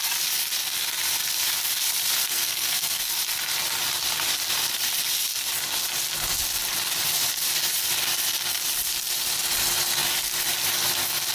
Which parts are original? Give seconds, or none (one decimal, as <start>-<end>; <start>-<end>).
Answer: 0.0-2.2; 3.0-11.3